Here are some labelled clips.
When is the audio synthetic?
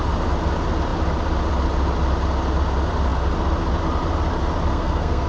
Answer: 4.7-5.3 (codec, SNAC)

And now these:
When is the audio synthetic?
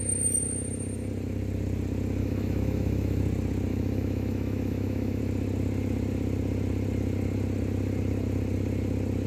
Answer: 2.2-3.2 (autoencoder, DAC-VAE); 3.7-5.2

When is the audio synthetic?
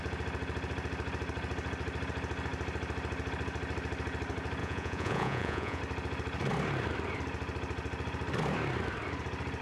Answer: 4.6-5.8 (vocoder, Vocos)